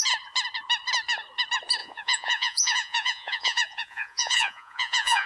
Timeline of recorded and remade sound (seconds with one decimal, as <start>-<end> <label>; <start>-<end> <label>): 0.0-1.8 recorded; 1.8-5.3 remade